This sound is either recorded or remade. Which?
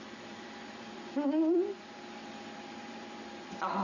remade